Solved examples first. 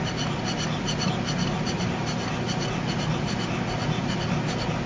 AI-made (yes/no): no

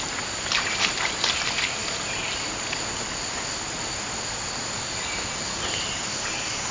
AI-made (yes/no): no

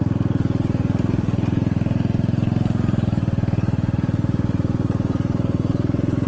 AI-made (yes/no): no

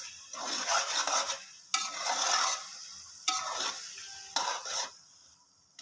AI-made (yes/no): no